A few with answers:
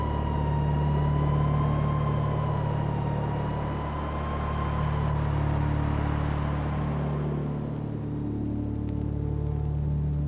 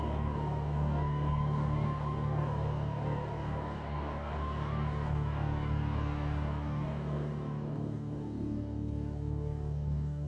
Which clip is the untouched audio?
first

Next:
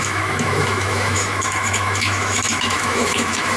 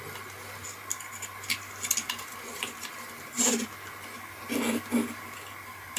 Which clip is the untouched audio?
second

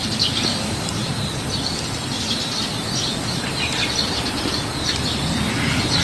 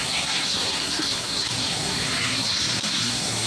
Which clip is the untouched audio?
first